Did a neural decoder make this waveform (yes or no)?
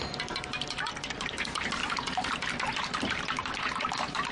no